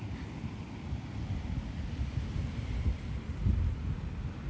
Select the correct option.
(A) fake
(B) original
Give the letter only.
B